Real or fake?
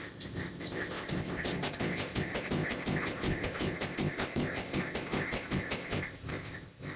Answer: fake